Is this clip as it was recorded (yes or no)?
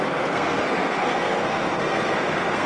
no